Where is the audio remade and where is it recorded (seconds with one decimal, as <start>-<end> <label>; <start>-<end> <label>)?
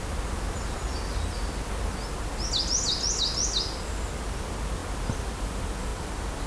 0.0-6.5 recorded